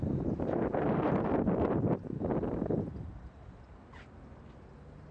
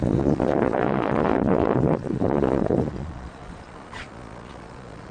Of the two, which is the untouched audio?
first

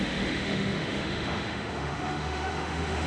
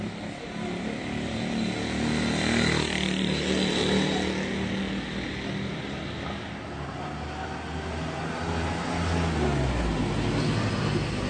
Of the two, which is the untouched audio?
second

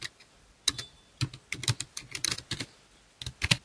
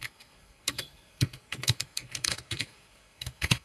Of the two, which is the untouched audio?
first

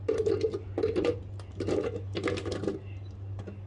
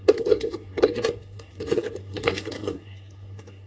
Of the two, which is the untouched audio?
first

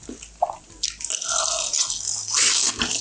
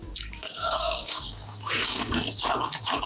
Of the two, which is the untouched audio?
first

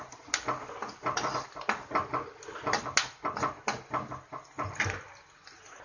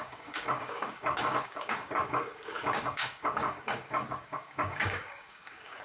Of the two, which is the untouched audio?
first